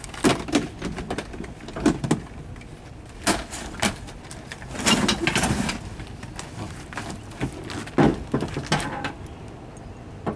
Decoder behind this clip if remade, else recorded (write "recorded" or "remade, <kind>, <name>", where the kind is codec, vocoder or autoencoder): recorded